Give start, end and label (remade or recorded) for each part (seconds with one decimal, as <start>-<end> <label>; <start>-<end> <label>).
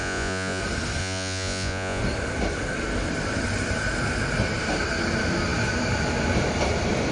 0.0-0.6 remade; 0.6-1.0 recorded; 1.0-2.0 remade; 2.0-7.1 recorded